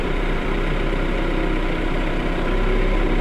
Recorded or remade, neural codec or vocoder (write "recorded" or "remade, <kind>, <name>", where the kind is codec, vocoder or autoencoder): remade, vocoder, BigVGAN v2